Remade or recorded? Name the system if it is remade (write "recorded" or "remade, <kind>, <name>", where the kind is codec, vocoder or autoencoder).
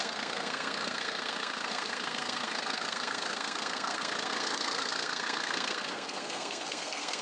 remade, codec, SNAC